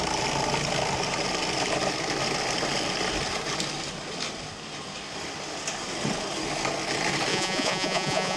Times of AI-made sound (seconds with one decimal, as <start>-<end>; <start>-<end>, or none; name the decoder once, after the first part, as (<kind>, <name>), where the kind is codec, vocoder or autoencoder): 7.3-8.4 (vocoder, Vocos)